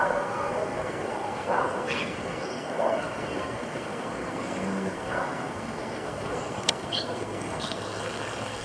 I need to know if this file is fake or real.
fake